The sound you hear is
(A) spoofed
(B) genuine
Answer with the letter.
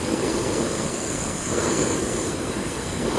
A